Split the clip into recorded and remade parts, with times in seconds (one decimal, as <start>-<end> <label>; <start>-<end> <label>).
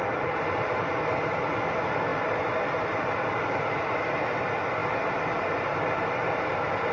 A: 0.0-6.9 recorded